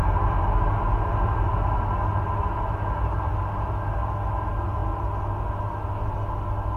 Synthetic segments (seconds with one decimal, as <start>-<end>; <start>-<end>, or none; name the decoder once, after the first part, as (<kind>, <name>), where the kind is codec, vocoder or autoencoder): none